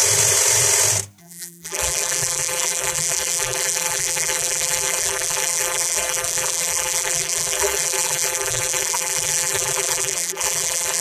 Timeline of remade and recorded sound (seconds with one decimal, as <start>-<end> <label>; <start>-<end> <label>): 0.0-1.2 recorded; 1.2-11.0 remade